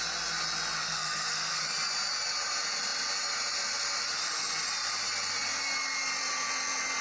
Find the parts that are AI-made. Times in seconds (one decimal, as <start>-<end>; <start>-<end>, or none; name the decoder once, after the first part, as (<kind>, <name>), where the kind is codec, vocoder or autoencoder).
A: 0.8-1.6 (codec, SNAC)

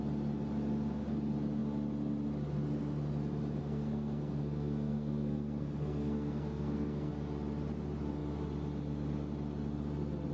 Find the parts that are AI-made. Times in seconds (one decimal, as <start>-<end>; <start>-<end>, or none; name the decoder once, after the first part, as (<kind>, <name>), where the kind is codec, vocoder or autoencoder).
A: 3.6-7.1 (codec, SNAC)